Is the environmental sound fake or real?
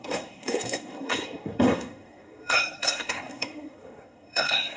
fake